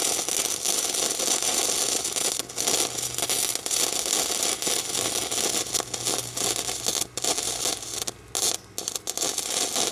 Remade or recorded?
recorded